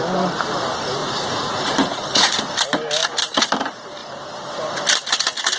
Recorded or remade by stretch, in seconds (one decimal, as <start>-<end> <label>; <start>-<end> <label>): 0.0-1.0 recorded; 1.0-2.4 remade; 2.4-5.6 recorded